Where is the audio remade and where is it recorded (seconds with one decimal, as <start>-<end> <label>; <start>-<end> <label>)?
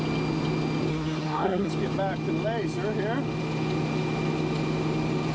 0.0-0.9 recorded; 0.9-1.7 remade; 1.7-5.3 recorded